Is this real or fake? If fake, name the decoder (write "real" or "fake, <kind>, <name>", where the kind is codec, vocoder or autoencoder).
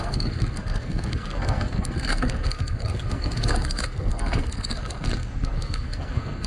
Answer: fake, codec, SNAC